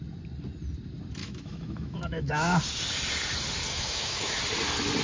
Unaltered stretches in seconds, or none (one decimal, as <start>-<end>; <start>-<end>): 0.0-1.2; 2.6-3.7; 4.4-5.0